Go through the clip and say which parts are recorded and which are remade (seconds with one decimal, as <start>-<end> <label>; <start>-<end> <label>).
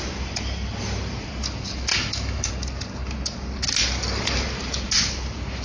0.0-1.9 recorded; 1.9-2.5 remade; 2.5-5.6 recorded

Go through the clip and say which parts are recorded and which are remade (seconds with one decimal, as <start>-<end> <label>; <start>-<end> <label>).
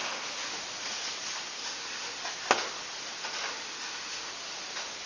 0.0-0.6 remade; 0.6-1.6 recorded; 1.6-2.2 remade; 2.2-3.5 recorded; 3.5-4.3 remade; 4.3-5.1 recorded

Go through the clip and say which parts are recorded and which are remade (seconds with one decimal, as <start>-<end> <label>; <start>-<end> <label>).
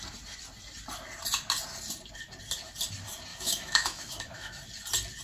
0.0-3.3 recorded; 3.3-4.6 remade; 4.6-5.2 recorded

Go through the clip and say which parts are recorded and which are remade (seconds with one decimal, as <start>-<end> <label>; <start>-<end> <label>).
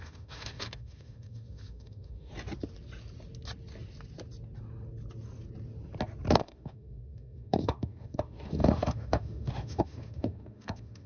0.0-2.3 remade; 2.3-6.3 recorded; 6.3-11.1 remade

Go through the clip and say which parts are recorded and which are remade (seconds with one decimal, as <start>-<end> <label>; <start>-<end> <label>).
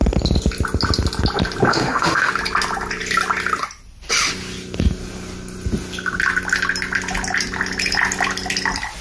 0.0-1.7 recorded; 1.7-2.3 remade; 2.3-9.0 recorded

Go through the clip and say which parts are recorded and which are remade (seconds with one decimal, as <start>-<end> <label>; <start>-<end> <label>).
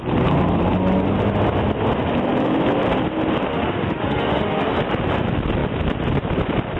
0.0-3.5 recorded; 3.5-4.8 remade; 4.8-6.8 recorded